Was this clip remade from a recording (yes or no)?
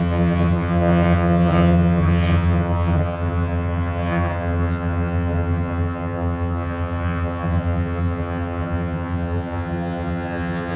yes